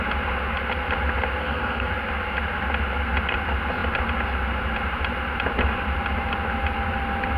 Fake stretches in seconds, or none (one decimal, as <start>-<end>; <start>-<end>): 1.4-1.9